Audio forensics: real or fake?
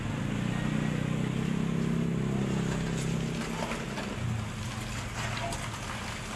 real